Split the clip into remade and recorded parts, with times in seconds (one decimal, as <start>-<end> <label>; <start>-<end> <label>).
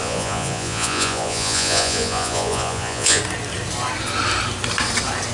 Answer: 0.0-3.2 remade; 3.2-5.3 recorded